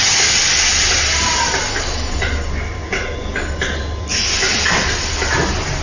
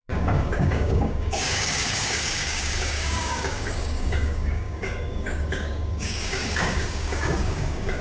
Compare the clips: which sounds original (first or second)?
first